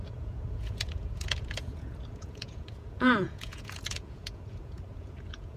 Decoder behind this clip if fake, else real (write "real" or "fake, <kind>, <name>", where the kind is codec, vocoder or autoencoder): fake, vocoder, Vocos